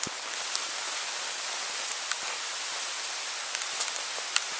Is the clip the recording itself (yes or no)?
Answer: yes